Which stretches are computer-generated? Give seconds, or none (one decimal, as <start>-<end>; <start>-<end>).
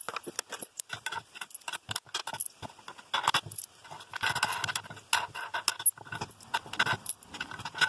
none